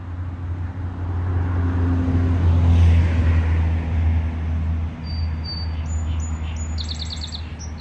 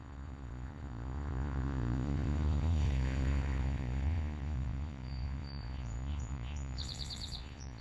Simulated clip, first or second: second